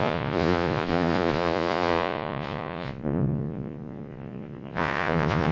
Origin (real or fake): fake